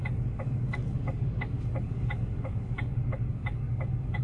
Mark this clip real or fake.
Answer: fake